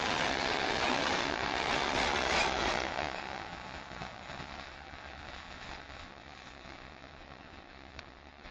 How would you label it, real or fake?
fake